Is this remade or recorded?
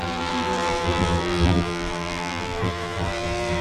remade